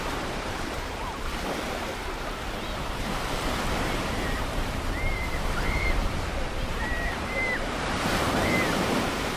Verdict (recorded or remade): remade